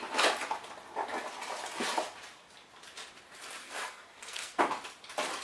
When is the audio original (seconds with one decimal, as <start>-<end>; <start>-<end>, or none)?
0.0-3.6; 4.6-5.4

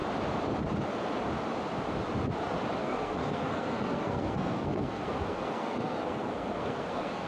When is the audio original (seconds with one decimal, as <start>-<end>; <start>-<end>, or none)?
0.0-2.8

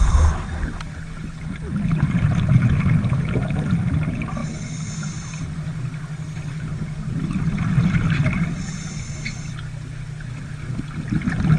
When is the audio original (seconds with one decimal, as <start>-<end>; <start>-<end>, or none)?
0.0-11.6

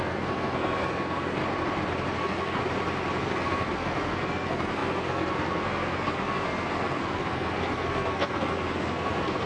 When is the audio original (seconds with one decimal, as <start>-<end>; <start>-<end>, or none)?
1.4-2.2; 2.6-3.2

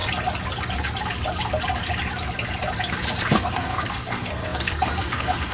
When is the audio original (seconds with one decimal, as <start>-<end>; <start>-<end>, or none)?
0.0-3.3

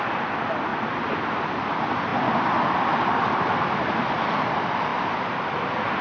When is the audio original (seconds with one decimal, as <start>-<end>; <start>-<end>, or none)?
0.0-6.0